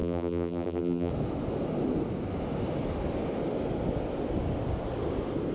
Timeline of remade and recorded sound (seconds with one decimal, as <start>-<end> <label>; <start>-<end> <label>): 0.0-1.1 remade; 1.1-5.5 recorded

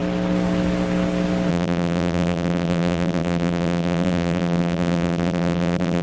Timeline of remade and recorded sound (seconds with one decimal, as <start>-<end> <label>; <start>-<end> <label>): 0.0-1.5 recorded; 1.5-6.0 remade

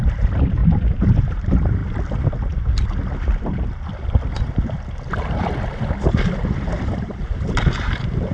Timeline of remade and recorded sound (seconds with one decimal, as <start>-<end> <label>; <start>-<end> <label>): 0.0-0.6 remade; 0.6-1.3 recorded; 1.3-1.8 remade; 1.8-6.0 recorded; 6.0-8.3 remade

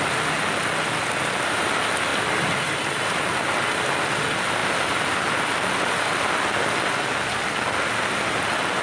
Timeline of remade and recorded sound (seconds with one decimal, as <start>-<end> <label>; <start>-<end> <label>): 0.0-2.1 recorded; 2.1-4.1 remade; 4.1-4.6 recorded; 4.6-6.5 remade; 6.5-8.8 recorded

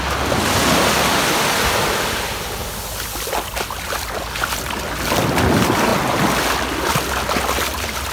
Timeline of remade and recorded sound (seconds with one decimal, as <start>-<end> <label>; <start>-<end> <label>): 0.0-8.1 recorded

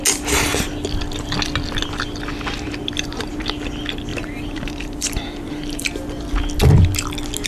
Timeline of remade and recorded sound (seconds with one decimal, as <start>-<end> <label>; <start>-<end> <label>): 0.0-2.8 recorded; 2.8-3.3 remade; 3.3-4.1 recorded; 4.1-5.9 remade; 5.9-7.5 recorded